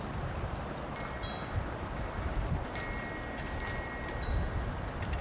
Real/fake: real